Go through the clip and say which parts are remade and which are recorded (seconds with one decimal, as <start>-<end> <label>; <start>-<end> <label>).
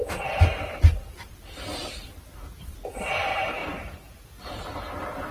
0.0-1.8 recorded; 1.8-2.9 remade; 2.9-5.3 recorded